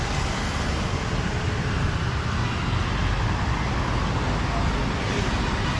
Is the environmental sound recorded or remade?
recorded